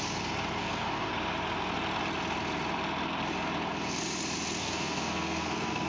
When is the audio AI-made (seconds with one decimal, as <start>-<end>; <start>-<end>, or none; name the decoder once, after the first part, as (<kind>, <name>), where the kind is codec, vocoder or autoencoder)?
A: 0.6-1.1 (codec, SNAC); 4.6-5.9